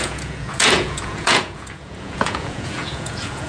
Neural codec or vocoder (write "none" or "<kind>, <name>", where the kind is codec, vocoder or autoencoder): vocoder, Vocos